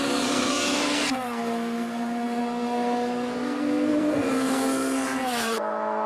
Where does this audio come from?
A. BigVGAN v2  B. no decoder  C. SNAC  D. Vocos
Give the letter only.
C